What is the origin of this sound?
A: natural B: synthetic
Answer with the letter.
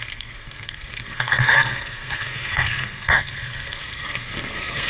B